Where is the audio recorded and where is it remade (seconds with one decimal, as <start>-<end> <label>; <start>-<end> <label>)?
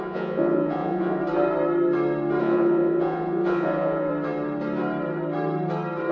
0.0-1.2 remade; 1.2-2.4 recorded; 2.4-4.1 remade; 4.1-6.1 recorded